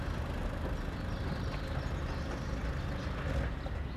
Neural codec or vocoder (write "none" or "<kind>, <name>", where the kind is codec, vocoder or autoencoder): none